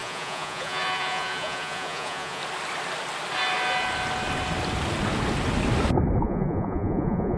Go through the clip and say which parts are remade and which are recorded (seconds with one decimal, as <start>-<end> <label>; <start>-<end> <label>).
0.0-2.4 remade; 2.4-6.2 recorded; 6.2-7.4 remade